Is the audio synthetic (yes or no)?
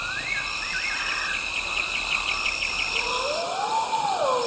no